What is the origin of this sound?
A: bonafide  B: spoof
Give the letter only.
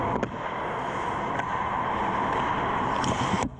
A